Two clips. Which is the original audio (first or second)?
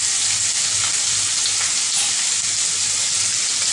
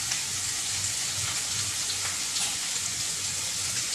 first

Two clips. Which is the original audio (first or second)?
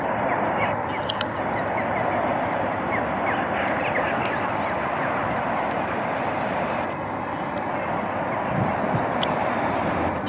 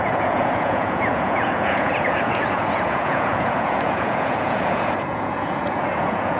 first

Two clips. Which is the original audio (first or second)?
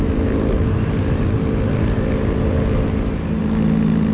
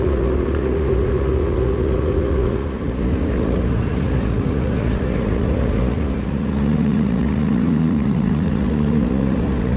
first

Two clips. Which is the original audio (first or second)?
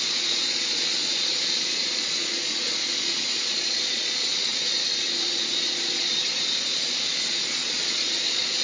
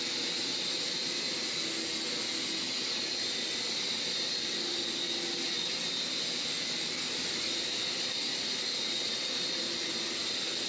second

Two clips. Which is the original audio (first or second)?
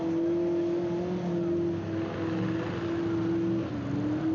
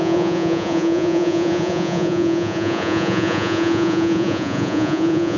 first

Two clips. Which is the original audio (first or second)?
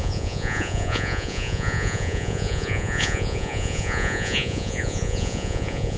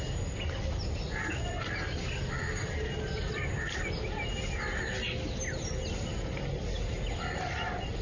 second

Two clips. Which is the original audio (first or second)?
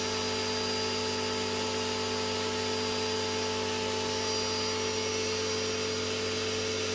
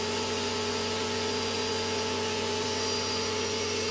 first